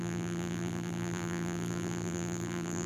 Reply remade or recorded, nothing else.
remade